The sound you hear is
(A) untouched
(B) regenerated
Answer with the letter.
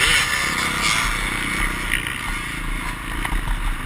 A